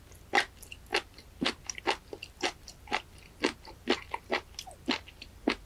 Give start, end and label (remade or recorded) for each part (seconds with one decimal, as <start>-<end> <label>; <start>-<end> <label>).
0.0-0.9 recorded; 0.9-1.8 remade; 1.8-2.2 recorded; 2.2-2.7 remade; 2.7-5.7 recorded